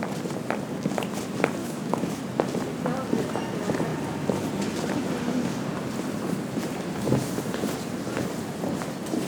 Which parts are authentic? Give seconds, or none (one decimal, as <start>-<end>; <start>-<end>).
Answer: 0.0-1.6; 2.2-9.3